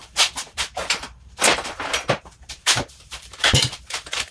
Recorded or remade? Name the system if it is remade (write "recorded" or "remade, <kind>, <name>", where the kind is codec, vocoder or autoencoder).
remade, vocoder, BigVGAN v2